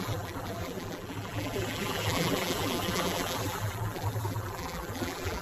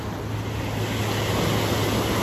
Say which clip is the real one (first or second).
second